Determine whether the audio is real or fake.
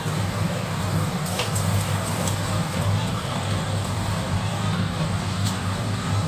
fake